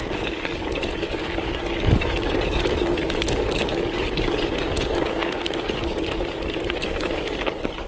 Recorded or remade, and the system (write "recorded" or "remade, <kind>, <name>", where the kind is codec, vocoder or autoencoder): remade, codec, DAC